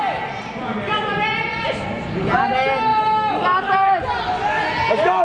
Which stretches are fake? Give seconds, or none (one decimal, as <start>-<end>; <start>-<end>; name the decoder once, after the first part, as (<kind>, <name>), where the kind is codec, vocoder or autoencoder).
none